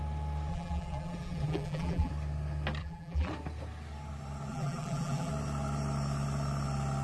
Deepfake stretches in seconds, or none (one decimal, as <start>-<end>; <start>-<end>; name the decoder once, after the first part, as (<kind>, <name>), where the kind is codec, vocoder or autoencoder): 0.5-2.1 (vocoder, BigVGAN v2); 2.8-3.3; 4.5-5.3